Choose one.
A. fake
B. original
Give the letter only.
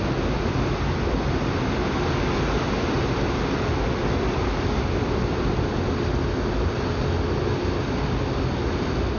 B